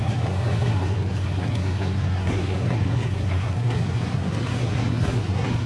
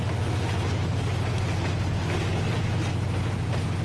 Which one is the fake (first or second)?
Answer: first